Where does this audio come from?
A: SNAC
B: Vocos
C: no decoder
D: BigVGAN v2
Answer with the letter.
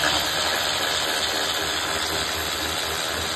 C